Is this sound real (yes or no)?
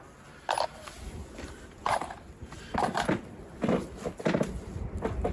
yes